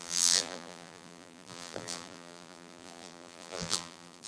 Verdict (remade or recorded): remade